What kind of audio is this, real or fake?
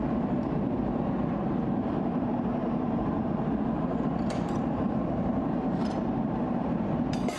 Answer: fake